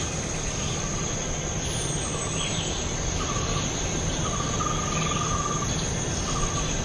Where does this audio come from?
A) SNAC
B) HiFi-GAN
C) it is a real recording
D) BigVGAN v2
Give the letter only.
C